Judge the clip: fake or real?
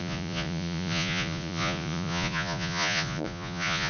fake